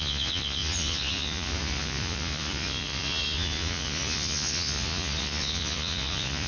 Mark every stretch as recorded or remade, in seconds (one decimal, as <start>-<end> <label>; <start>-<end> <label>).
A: 0.0-6.5 remade